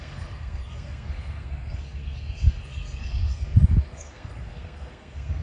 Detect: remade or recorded remade